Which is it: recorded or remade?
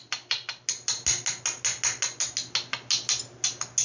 recorded